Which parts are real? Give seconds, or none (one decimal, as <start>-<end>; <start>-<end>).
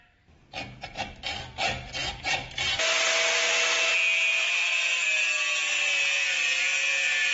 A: 0.0-7.3